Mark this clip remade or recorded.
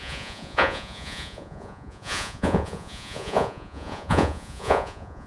remade